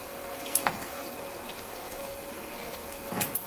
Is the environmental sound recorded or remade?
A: remade